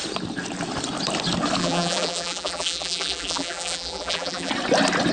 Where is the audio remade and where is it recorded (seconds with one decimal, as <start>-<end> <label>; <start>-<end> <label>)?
0.0-1.6 recorded; 1.6-4.5 remade; 4.5-5.1 recorded